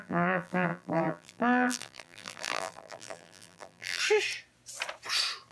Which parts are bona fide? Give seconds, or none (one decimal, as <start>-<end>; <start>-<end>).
4.0-5.5